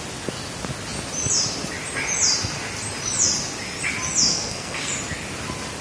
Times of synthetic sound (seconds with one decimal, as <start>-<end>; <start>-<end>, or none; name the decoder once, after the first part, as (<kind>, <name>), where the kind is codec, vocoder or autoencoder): 4.3-4.9 (codec, SNAC)